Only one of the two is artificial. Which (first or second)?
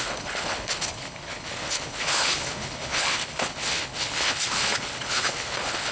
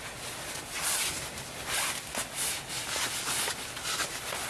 first